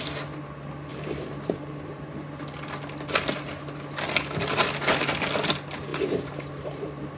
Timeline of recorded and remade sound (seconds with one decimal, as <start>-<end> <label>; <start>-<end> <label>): 0.0-0.9 recorded; 0.9-2.4 remade; 2.4-5.9 recorded; 5.9-7.2 remade